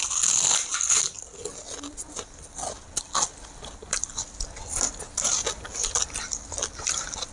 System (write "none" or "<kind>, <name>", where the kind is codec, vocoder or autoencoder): none